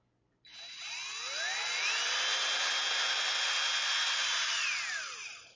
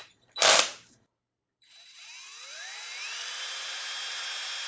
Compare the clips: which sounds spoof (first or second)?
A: second